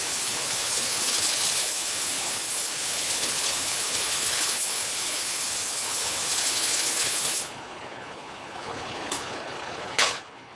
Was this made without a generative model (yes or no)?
no